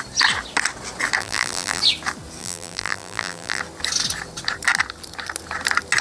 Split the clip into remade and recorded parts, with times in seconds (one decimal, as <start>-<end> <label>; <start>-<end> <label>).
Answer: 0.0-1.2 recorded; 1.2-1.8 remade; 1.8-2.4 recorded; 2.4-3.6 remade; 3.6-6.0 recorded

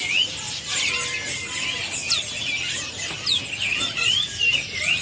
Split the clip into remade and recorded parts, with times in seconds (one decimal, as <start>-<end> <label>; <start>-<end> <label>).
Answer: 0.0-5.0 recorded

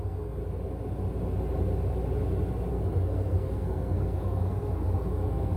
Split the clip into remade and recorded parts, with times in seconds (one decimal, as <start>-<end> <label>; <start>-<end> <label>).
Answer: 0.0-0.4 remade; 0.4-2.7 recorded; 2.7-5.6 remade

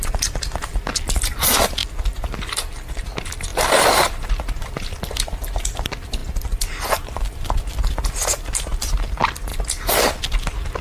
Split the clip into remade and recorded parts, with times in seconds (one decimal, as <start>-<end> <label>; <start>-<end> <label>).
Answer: 0.0-3.5 recorded; 3.5-4.3 remade; 4.3-10.8 recorded

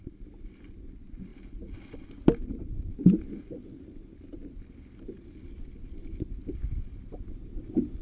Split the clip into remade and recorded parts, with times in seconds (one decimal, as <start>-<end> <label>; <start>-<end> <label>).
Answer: 0.0-8.0 recorded

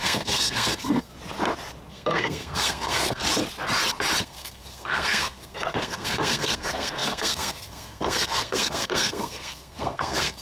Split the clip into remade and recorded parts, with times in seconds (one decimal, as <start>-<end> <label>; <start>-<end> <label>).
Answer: 0.0-1.1 remade; 1.1-1.9 recorded; 1.9-3.2 remade; 3.2-4.2 recorded; 4.2-10.4 remade